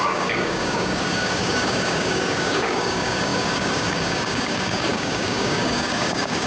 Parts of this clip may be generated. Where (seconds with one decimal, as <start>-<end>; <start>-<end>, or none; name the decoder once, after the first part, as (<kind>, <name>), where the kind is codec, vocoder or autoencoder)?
0.0-6.5 (codec, DAC)